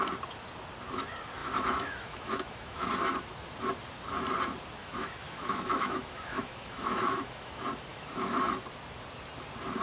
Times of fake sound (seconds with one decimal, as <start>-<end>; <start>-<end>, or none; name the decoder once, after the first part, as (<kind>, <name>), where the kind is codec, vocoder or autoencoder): 1.4-2.9 (autoencoder, DAC-VAE); 4.8-7.5; 7.9-8.4